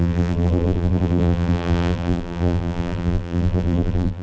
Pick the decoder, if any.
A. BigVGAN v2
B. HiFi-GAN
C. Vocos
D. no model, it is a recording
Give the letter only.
A